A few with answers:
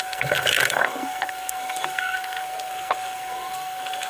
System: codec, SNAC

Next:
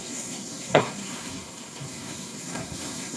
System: codec, SNAC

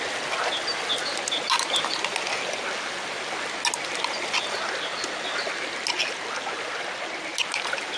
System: none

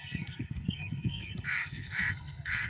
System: codec, SNAC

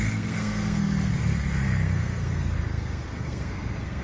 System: codec, SNAC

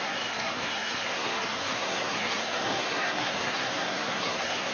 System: codec, SNAC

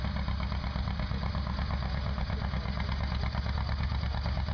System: none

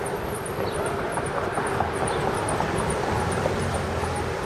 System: none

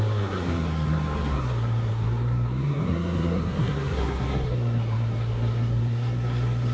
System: codec, SNAC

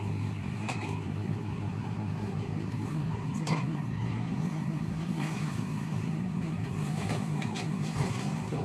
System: codec, SNAC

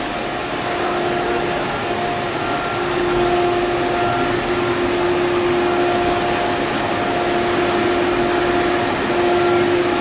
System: none